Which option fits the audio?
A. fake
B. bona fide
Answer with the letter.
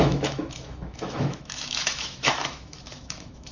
A